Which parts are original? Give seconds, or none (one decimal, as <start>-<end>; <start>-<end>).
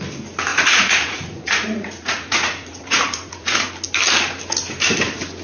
0.0-0.5; 3.7-5.4